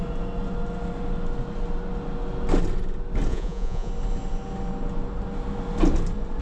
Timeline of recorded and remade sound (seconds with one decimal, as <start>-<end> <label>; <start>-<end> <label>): 0.0-3.3 recorded; 3.3-3.9 remade; 3.9-6.4 recorded